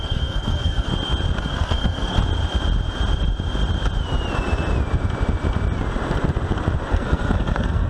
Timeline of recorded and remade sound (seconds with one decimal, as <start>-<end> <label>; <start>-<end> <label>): 0.0-0.9 remade; 0.9-1.4 recorded; 1.4-2.2 remade; 2.2-6.9 recorded; 6.9-7.9 remade

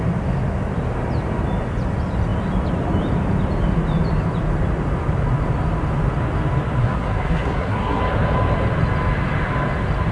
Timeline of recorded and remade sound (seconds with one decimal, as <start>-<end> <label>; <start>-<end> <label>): 0.0-6.8 recorded; 6.8-8.0 remade; 8.0-10.1 recorded

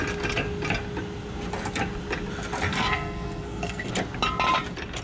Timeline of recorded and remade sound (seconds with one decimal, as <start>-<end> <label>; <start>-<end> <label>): 0.0-2.7 recorded; 2.7-3.9 remade; 3.9-5.0 recorded

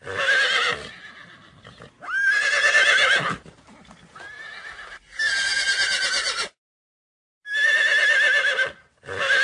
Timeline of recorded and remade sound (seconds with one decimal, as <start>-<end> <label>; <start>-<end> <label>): 0.0-9.4 recorded

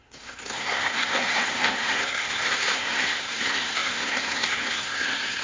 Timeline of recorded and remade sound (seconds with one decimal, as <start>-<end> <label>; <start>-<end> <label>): 0.0-5.4 remade